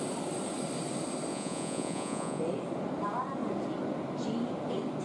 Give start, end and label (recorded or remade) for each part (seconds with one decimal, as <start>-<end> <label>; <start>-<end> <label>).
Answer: 0.0-1.3 recorded; 1.3-2.4 remade; 2.4-5.0 recorded